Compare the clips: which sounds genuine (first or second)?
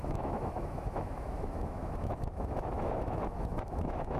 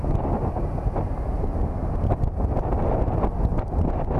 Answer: second